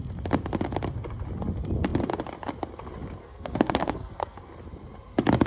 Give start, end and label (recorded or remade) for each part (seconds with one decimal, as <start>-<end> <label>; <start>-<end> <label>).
0.0-3.2 recorded; 3.2-4.5 remade; 4.5-5.5 recorded